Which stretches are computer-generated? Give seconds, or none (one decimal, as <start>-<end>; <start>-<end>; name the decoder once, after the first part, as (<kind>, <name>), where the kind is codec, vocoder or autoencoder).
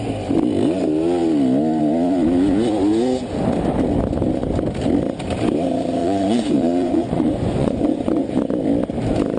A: 6.0-8.3 (vocoder, Vocos)